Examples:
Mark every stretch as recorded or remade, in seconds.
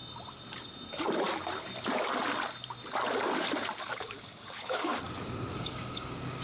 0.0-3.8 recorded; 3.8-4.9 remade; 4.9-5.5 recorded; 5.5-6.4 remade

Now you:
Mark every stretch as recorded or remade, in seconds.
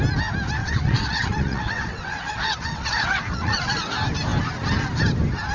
0.0-0.6 recorded; 0.6-3.9 remade; 3.9-5.5 recorded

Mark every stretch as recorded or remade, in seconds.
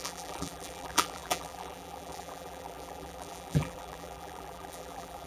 0.0-5.3 remade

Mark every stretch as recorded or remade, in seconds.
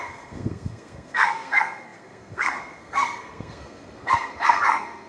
0.0-5.1 remade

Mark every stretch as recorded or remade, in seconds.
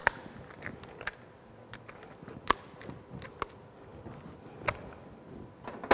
0.0-5.9 recorded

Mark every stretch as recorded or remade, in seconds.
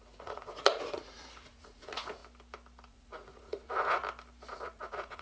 0.0-2.2 remade; 2.2-2.9 recorded; 2.9-4.0 remade; 4.0-4.5 recorded; 4.5-5.2 remade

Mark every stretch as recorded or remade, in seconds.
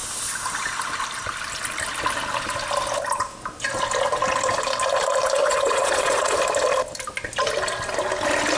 0.0-5.4 recorded; 5.4-6.4 remade; 6.4-8.6 recorded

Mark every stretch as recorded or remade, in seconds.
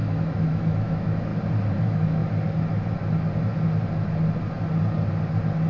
0.0-1.3 remade; 1.3-1.8 recorded; 1.8-2.2 remade; 2.2-5.7 recorded